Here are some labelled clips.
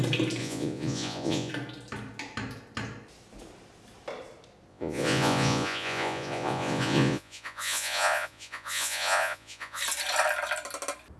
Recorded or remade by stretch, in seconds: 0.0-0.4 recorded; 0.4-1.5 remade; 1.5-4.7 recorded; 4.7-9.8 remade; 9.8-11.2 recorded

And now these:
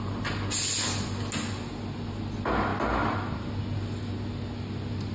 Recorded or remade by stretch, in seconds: 0.0-5.1 recorded

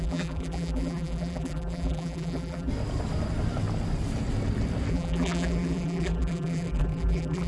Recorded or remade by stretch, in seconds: 0.0-2.7 remade; 2.7-4.9 recorded; 4.9-7.5 remade

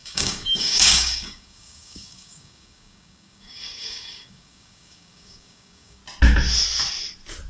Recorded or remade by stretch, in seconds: 0.0-6.0 remade; 6.0-7.5 recorded